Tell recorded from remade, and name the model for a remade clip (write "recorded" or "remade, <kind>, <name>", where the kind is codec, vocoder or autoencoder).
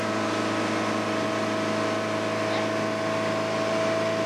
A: recorded